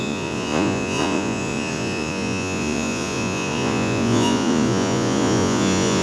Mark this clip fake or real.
fake